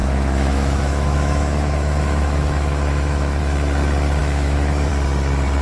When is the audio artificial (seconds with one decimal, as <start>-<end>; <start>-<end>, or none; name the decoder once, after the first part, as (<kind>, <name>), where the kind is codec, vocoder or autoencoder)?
0.0-3.4 (autoencoder, DAC-VAE); 4.2-4.9